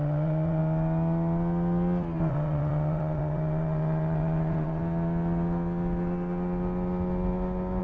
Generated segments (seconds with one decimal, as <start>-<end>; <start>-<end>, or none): 0.0-0.6; 2.3-4.8